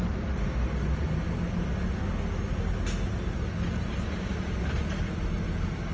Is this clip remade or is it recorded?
recorded